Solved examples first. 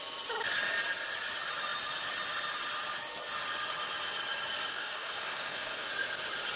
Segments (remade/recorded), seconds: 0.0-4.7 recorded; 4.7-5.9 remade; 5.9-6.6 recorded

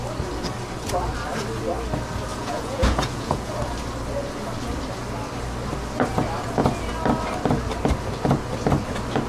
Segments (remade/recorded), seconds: 0.0-2.3 recorded; 2.3-3.5 remade; 3.5-9.3 recorded

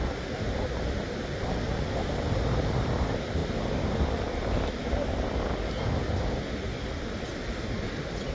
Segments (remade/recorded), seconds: 0.0-8.3 recorded

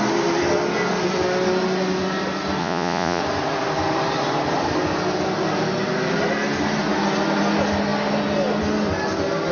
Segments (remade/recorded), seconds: 0.0-2.6 recorded; 2.6-3.2 remade; 3.2-9.5 recorded

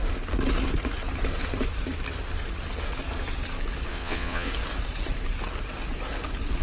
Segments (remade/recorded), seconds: 0.0-3.9 recorded; 3.9-4.5 remade; 4.5-6.6 recorded

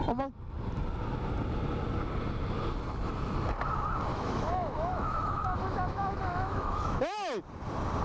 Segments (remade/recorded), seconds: 0.0-4.1 recorded; 4.1-7.4 remade; 7.4-8.0 recorded

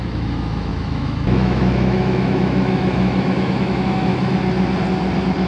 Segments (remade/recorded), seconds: 0.0-4.1 remade; 4.1-5.5 recorded